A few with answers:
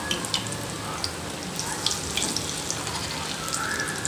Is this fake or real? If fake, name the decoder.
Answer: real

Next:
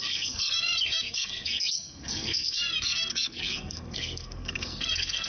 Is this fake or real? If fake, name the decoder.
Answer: fake, codec, SNAC